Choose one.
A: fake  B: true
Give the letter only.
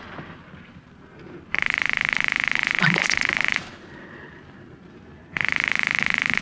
A